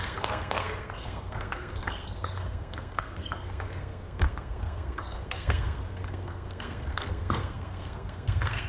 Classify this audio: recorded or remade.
remade